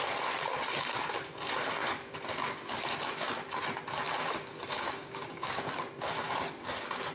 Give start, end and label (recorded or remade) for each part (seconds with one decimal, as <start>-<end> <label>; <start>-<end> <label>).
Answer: 0.0-4.7 recorded; 4.7-5.6 remade; 5.6-7.1 recorded